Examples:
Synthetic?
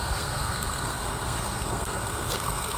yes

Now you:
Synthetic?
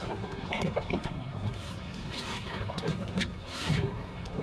yes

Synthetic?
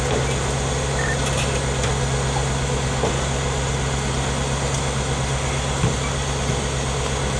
no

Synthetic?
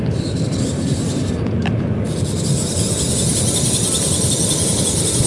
no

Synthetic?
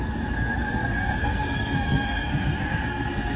yes